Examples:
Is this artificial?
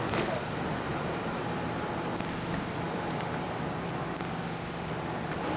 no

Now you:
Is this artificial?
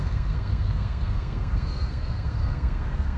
yes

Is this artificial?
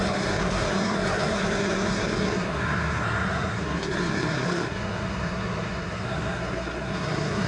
yes